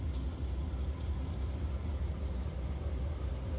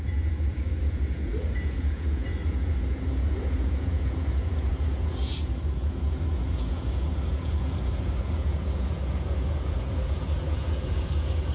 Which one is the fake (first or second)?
second